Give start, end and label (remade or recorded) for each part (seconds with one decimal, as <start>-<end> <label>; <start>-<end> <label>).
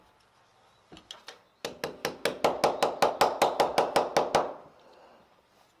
0.0-5.8 recorded